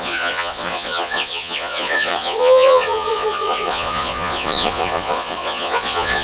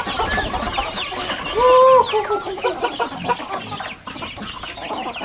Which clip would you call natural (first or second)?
second